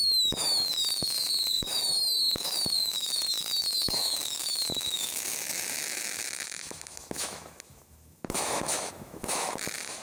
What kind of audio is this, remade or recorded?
remade